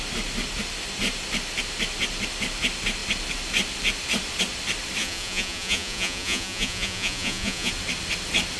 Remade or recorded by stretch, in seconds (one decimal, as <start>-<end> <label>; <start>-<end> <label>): 0.0-5.0 recorded; 5.0-7.7 remade; 7.7-8.6 recorded